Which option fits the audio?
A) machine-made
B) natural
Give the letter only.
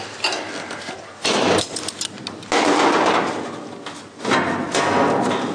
B